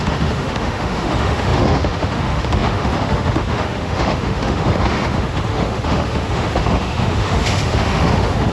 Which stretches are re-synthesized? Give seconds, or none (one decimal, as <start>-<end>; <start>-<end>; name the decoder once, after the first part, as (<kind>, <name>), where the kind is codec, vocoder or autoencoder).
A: 0.0-8.5 (autoencoder, DAC-VAE)